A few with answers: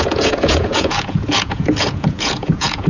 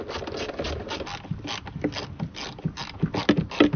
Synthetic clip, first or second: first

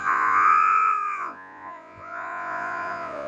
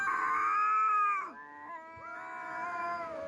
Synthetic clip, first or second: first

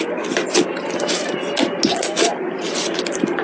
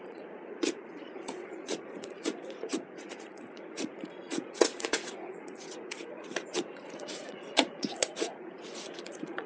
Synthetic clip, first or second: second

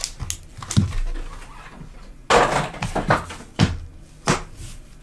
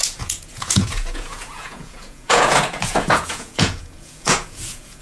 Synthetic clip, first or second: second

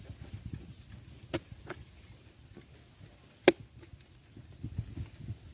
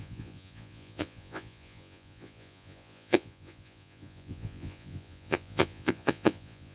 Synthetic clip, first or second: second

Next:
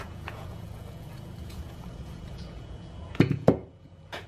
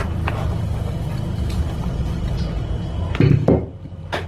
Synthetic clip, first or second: first